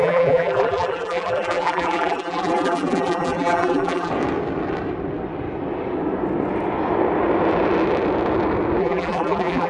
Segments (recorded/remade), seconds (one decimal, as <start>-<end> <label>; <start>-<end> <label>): 0.0-4.1 remade; 4.1-8.8 recorded; 8.8-9.7 remade